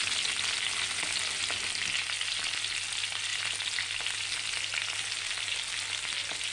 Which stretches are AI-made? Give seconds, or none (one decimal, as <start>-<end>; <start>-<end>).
none